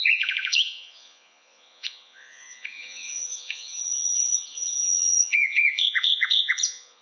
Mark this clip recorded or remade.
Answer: remade